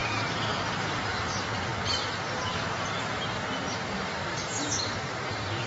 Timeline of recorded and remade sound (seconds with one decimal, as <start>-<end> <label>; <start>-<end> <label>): 0.0-5.7 remade